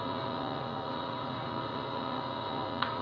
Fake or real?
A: fake